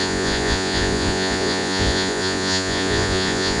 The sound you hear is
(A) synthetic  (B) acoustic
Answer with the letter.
A